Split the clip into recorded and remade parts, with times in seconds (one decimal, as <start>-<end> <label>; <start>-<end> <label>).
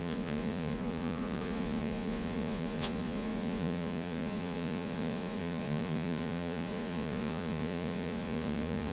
0.0-8.9 remade